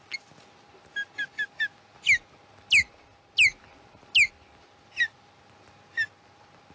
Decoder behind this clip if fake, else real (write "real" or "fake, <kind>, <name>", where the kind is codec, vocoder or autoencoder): real